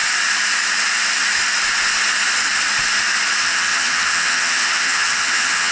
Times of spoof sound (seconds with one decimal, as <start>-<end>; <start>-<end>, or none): 3.4-5.7